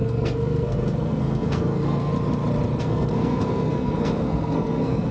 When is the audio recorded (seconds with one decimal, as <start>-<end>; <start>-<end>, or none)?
2.1-2.8